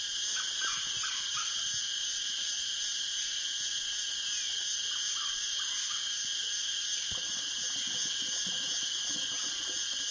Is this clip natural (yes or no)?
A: yes